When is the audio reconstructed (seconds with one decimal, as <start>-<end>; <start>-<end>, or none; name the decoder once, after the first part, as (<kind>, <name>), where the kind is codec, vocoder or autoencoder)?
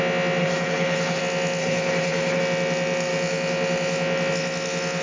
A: 0.4-1.2 (codec, HILCodec); 1.6-2.4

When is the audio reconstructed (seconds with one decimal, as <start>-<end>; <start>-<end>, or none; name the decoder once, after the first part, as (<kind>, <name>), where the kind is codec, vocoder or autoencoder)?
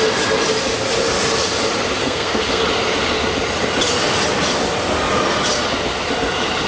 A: 2.0-2.6 (codec, SNAC)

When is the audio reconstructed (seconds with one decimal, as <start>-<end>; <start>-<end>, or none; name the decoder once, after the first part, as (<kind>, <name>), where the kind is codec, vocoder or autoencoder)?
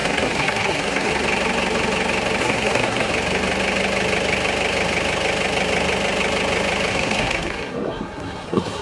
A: 0.0-1.1 (codec, SNAC); 2.4-3.1; 6.9-8.8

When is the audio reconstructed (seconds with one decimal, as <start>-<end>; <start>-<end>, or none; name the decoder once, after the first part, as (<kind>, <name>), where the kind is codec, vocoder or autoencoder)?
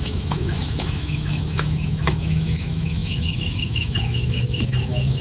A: 0.0-5.2 (autoencoder, DAC-VAE)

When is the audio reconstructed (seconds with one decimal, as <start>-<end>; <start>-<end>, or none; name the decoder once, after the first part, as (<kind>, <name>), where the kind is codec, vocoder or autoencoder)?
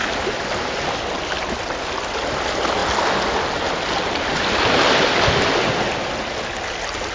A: none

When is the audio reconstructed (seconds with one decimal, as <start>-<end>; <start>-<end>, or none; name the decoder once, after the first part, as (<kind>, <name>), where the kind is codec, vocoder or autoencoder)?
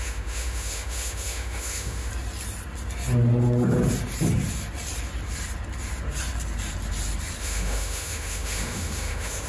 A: 0.0-2.1 (autoencoder, DAC-VAE); 7.4-9.5